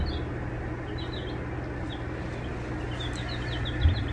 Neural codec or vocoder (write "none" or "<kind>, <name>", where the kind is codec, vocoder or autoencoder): none